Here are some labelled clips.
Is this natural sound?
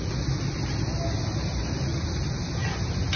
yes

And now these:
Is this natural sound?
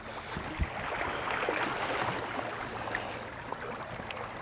yes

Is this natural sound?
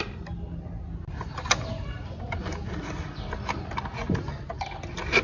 yes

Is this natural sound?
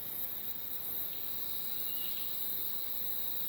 yes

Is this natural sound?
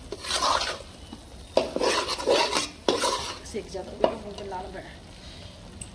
yes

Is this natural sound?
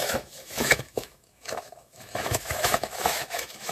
no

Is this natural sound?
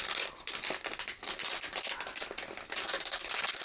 yes